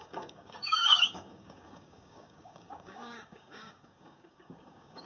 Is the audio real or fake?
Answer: fake